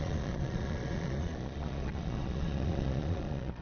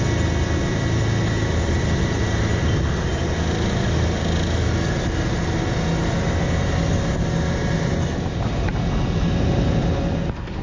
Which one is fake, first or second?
first